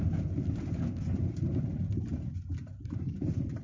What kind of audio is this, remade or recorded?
recorded